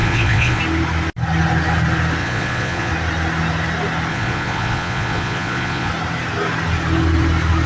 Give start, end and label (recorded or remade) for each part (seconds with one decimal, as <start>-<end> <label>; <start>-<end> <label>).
0.0-0.6 remade; 0.6-2.2 recorded; 2.2-2.9 remade; 2.9-4.1 recorded; 4.1-5.9 remade; 5.9-7.7 recorded